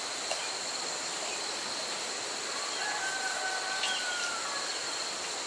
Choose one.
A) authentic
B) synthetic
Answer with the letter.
A